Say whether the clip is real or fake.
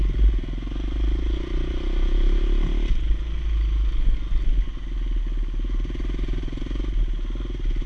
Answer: real